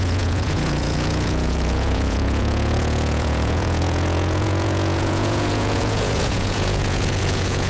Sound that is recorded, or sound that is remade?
remade